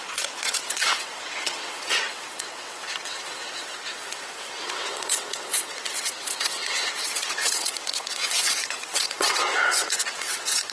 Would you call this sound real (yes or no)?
no